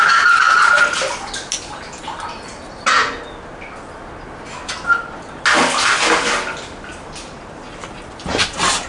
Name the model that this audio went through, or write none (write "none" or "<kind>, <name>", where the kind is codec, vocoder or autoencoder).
none